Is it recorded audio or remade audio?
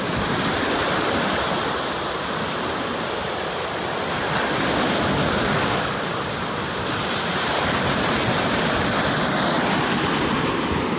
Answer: recorded